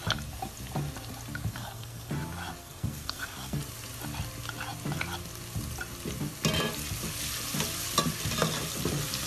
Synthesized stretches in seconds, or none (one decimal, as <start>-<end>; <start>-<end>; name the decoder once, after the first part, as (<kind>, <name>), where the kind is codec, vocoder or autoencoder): 1.5-2.1 (codec, SNAC); 2.6-3.6